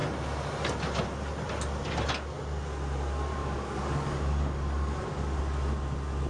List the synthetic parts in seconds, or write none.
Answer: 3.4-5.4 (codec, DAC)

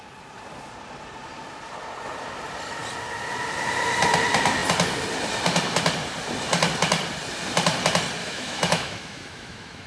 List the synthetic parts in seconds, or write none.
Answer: 8.2-9.9 (autoencoder, DAC-VAE)

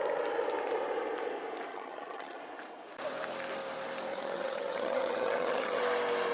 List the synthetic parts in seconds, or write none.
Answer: 1.7-2.4 (vocoder, HiFi-GAN); 4.1-5.8

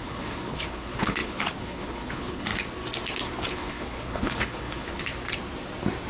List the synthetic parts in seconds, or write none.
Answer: 0.0-2.5 (codec, HILCodec); 3.5-5.1

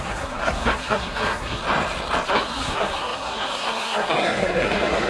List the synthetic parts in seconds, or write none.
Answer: 0.0-1.6 (codec, SNAC); 2.3-5.1